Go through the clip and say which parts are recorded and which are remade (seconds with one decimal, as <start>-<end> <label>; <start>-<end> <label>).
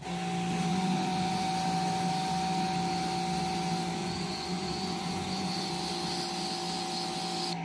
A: 0.0-0.7 recorded; 0.7-1.4 remade; 1.4-4.0 recorded; 4.0-5.7 remade; 5.7-7.6 recorded